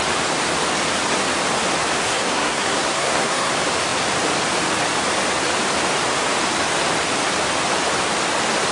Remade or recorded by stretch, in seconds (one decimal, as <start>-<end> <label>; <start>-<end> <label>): 0.0-2.0 recorded; 2.0-3.5 remade; 3.5-8.7 recorded